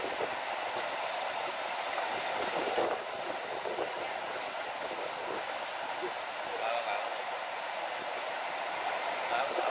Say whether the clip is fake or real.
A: real